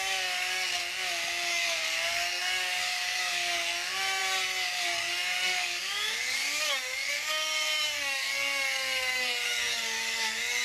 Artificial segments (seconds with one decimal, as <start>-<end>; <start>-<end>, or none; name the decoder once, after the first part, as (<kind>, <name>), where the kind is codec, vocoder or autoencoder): 0.0-0.8 (codec, DAC); 1.5-10.6